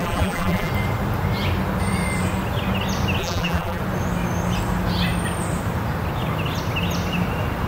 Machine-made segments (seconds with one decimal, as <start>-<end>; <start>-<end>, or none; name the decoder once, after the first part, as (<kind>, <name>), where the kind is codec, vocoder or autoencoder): 0.0-0.7 (vocoder, BigVGAN v2); 3.2-3.8

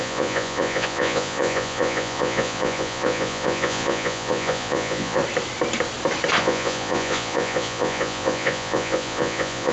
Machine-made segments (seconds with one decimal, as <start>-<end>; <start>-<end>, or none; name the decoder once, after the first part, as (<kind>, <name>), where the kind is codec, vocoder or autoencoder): 0.0-5.2 (vocoder, Vocos); 6.4-9.7

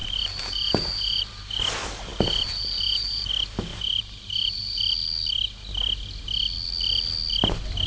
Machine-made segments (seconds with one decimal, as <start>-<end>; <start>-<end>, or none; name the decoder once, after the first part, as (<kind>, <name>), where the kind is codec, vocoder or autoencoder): 0.0-1.6 (vocoder, BigVGAN v2); 2.1-3.3; 3.7-4.8

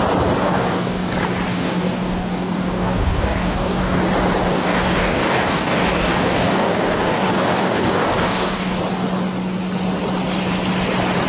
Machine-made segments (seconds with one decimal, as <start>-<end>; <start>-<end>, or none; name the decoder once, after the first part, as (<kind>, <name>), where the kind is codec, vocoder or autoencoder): 0.4-1.1 (codec, DAC); 1.5-4.0; 4.4-8.8

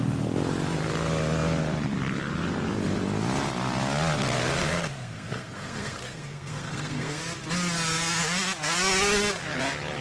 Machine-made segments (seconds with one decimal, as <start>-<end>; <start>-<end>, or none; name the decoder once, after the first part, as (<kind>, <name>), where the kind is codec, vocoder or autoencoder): 4.6-7.2 (codec, SNAC)

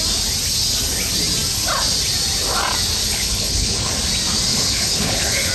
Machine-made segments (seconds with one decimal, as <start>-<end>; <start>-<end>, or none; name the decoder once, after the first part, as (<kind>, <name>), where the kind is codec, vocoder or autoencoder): 3.0-3.9 (codec, HILCodec); 4.5-5.5